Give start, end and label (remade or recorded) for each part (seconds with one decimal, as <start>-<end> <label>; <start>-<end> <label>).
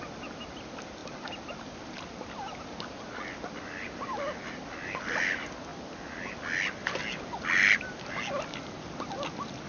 0.0-9.7 recorded